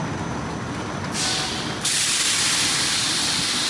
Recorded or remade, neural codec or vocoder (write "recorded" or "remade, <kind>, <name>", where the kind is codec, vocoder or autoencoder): recorded